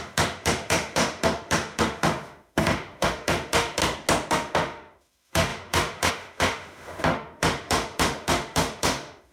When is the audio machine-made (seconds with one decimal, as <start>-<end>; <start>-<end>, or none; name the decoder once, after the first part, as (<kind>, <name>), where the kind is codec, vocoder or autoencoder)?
0.0-3.8 (autoencoder, DAC-VAE); 4.3-9.3